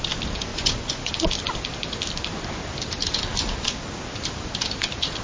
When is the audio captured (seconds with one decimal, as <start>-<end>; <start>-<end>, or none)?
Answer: 0.0-0.5; 1.1-5.2